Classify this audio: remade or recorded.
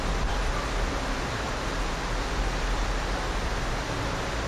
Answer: remade